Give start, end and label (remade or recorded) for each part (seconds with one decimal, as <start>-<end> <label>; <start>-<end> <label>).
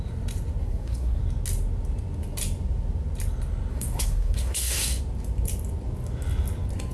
0.0-0.6 recorded; 0.6-1.2 remade; 1.2-3.7 recorded; 3.7-5.0 remade; 5.0-6.9 recorded